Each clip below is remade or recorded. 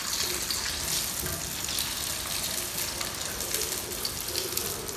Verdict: recorded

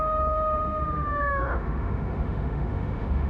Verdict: remade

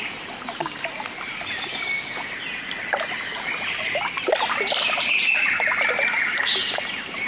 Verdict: recorded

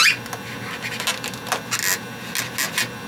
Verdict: recorded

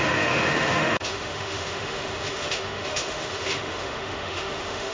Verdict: remade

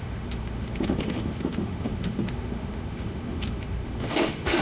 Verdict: remade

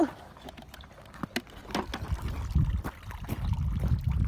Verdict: recorded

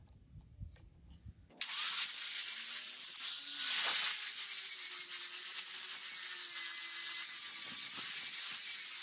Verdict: recorded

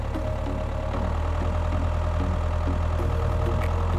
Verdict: recorded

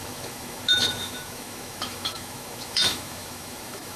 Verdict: remade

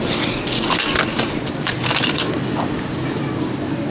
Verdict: recorded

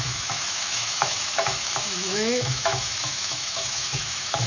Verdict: remade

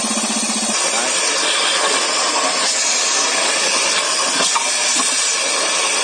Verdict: recorded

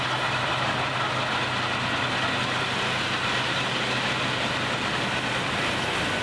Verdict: recorded